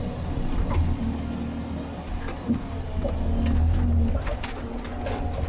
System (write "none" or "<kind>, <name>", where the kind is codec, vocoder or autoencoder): none